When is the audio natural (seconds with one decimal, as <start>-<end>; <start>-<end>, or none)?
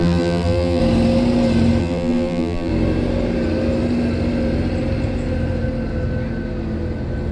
0.8-1.8; 2.7-7.3